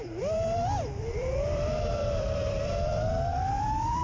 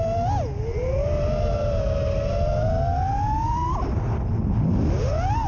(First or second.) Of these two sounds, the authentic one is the second